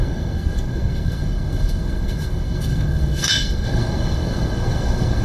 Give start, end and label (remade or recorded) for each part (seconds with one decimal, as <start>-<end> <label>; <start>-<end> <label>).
0.0-5.2 remade